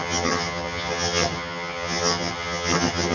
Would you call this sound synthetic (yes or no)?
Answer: yes